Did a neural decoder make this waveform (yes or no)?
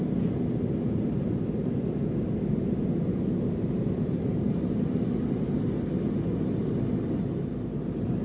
no